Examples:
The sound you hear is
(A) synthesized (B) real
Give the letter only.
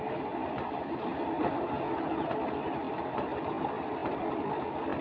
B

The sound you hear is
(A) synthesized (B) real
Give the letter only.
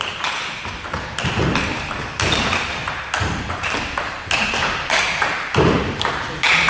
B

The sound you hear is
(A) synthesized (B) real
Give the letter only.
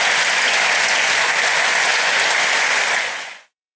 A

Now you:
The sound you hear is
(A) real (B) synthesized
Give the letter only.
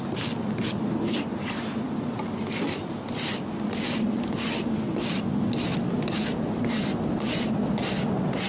A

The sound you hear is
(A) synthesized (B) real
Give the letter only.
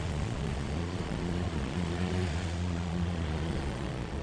A